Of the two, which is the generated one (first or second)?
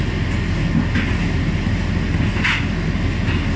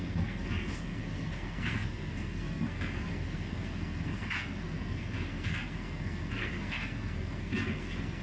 second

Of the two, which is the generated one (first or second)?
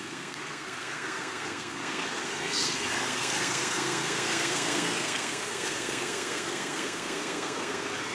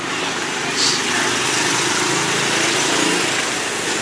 first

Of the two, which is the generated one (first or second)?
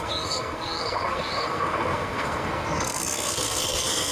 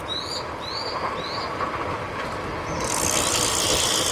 first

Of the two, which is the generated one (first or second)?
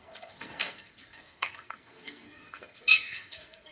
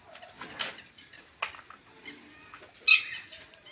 first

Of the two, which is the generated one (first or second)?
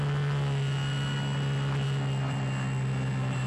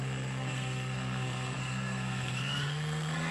second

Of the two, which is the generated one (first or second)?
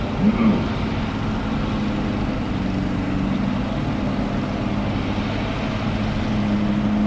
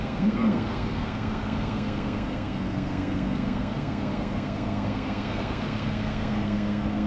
second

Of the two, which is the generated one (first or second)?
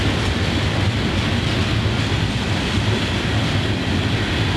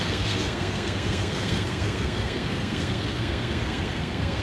second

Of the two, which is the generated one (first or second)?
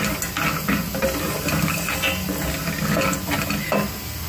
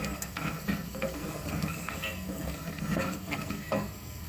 second